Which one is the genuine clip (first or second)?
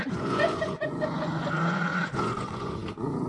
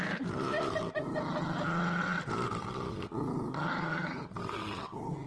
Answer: second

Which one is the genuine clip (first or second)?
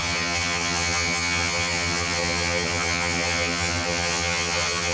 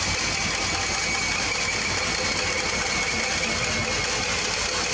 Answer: second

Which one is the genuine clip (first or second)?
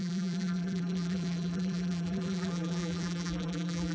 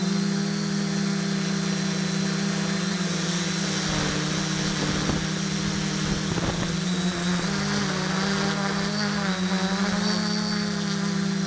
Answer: second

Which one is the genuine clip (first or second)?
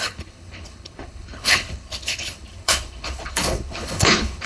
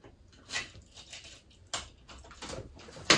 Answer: second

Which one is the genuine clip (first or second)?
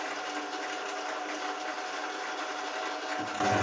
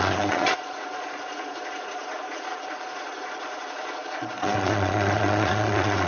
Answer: first